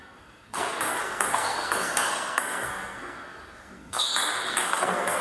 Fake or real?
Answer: fake